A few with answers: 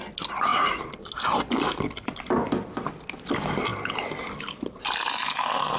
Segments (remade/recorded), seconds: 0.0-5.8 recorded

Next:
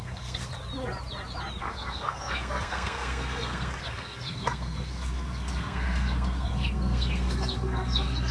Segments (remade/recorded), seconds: 0.0-0.5 remade; 0.5-1.6 recorded; 1.6-8.3 remade

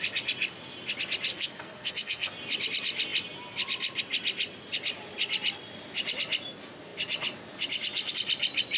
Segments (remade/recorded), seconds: 0.0-1.3 recorded; 1.3-2.3 remade; 2.3-8.8 recorded

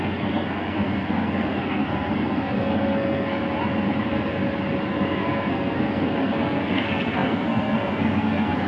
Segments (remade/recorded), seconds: 0.0-3.4 remade; 3.4-4.0 recorded; 4.0-4.4 remade; 4.4-4.9 recorded; 4.9-8.7 remade

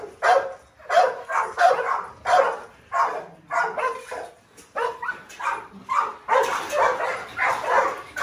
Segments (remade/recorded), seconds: 0.0-1.2 recorded; 1.2-1.7 remade; 1.7-8.2 recorded

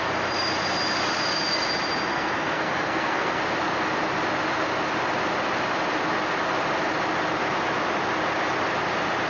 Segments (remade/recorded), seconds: 0.0-2.1 recorded; 2.1-3.4 remade; 3.4-9.3 recorded